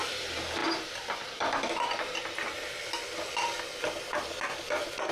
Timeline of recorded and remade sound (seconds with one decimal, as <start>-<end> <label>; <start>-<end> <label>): 0.0-5.1 recorded